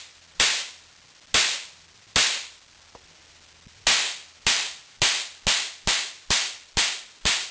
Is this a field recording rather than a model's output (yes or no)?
yes